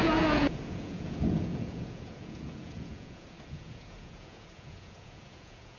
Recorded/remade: remade